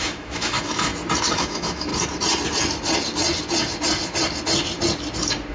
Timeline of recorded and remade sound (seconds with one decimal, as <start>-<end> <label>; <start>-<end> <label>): 0.0-0.9 remade; 0.9-1.4 recorded; 1.4-1.9 remade; 1.9-5.5 recorded